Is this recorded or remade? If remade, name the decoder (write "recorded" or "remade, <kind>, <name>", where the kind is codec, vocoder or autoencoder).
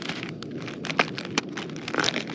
recorded